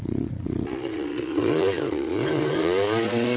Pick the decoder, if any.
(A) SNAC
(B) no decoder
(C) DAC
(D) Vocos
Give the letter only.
D